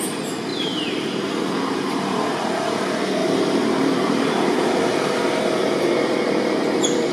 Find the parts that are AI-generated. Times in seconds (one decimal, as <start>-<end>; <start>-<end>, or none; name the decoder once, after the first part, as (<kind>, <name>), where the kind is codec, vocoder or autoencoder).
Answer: 0.5-2.0 (vocoder, BigVGAN v2); 3.2-7.1